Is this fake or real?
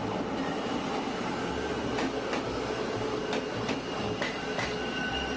real